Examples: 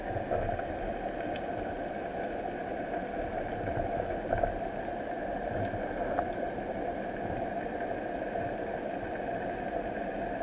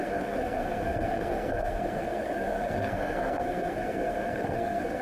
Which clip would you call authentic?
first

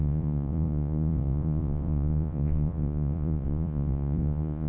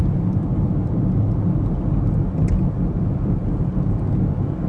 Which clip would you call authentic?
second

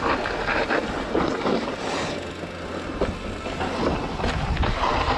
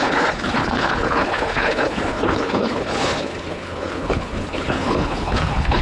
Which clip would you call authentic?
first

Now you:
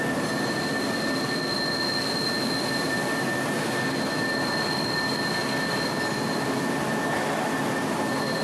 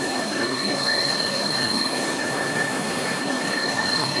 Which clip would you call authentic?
first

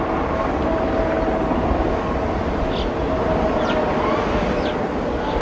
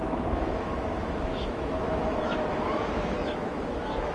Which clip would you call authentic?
first